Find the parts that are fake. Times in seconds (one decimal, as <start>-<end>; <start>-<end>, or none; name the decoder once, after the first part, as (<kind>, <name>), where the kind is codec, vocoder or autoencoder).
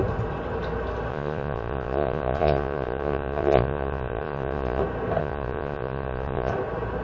1.1-4.8 (vocoder, Vocos); 5.2-6.5